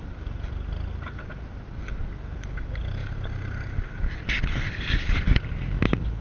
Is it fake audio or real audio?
real